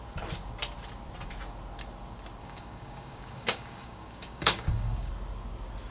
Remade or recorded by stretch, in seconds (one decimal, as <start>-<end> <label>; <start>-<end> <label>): 0.0-2.4 recorded; 2.4-5.1 remade; 5.1-5.9 recorded